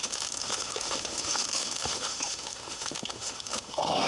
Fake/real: fake